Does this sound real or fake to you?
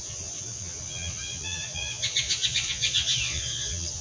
fake